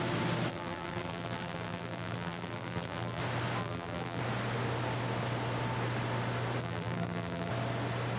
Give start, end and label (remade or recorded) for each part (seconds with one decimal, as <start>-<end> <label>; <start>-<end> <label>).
0.0-0.5 recorded; 0.5-3.2 remade; 3.2-3.6 recorded; 3.6-4.2 remade; 4.2-6.6 recorded; 6.6-7.5 remade; 7.5-8.2 recorded